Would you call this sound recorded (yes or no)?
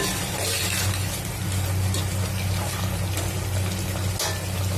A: yes